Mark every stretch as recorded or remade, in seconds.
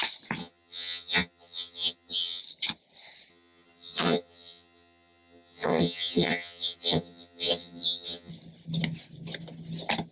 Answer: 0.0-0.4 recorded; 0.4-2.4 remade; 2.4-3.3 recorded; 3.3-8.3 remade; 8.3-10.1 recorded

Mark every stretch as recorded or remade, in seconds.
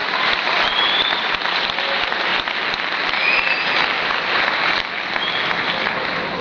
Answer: 0.0-1.1 remade; 1.1-6.4 recorded